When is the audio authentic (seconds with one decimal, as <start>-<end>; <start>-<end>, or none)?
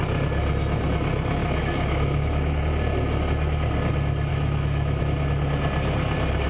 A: 0.0-1.4; 2.6-4.3; 5.0-6.5